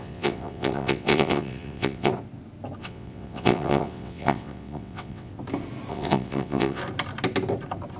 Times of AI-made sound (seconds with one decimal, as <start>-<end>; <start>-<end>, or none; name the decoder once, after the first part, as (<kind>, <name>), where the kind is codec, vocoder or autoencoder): 0.0-2.1 (vocoder, WaveNeXt); 2.8-5.3; 5.9-6.8